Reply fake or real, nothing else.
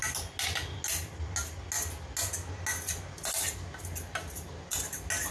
real